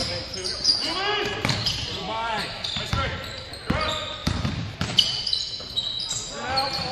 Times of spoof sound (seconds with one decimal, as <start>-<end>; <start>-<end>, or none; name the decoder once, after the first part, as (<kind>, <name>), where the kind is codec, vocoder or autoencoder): 0.0-2.0 (vocoder, BigVGAN v2); 4.2-6.1